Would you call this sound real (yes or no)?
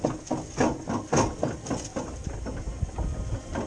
yes